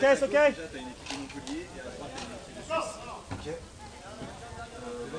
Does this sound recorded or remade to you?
recorded